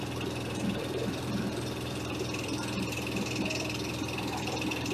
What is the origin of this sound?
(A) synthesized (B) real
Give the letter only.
A